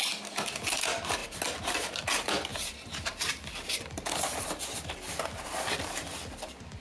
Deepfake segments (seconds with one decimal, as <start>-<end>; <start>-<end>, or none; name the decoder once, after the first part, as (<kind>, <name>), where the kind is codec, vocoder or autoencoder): 1.2-2.0 (vocoder, BigVGAN v2); 2.5-6.8